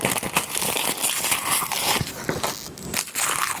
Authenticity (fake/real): real